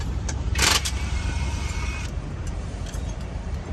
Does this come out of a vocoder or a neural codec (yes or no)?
yes